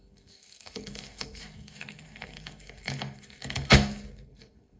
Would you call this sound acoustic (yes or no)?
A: no